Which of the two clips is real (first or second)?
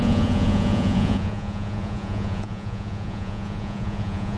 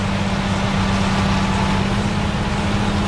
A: second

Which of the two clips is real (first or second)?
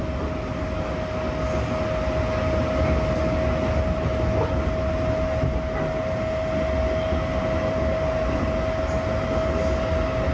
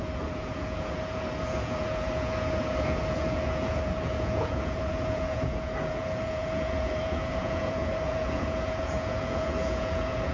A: first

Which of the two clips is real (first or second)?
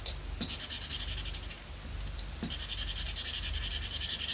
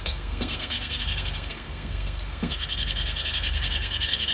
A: first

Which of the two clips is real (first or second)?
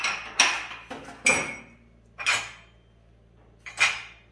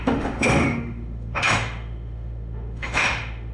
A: first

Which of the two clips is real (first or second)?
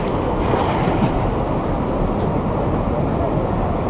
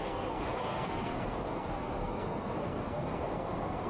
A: first